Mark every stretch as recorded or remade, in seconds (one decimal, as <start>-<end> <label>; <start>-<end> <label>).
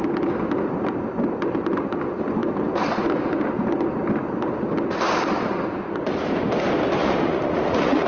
0.0-7.0 recorded; 7.0-8.1 remade